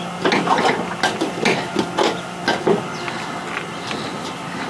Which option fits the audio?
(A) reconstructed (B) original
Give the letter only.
B